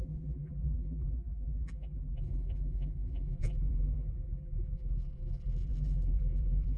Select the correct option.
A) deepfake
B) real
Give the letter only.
A